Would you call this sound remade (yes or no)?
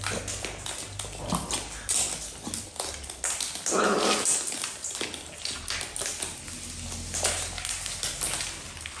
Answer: no